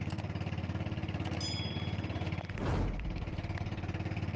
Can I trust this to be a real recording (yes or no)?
yes